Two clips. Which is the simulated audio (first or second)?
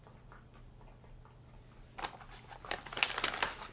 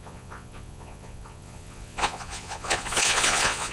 second